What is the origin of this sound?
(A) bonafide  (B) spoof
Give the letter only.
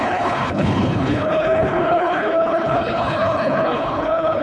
B